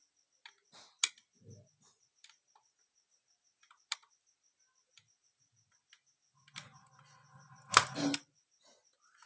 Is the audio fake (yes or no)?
no